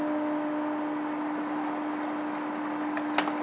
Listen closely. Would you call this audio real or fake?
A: real